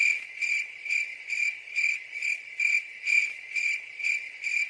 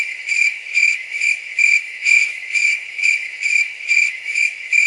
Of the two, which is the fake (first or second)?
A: second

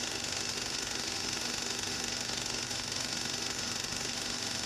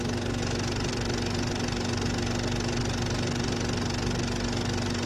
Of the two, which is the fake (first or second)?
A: first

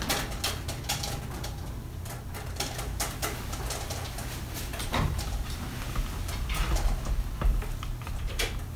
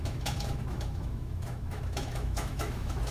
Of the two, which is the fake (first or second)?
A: second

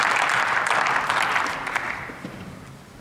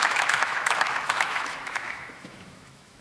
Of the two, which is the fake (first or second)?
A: second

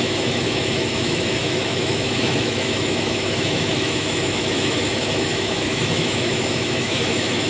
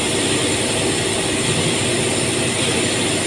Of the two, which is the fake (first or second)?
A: first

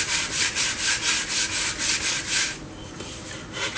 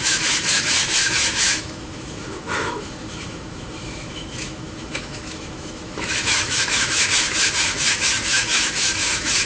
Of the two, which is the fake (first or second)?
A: second